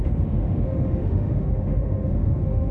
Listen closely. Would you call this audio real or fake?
fake